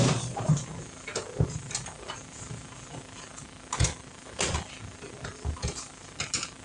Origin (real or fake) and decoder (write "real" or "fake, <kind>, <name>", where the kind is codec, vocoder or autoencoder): real